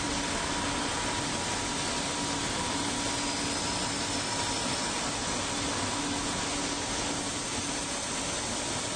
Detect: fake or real real